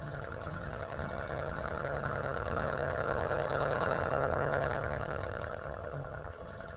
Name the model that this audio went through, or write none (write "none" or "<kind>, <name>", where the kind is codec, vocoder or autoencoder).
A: vocoder, HiFi-GAN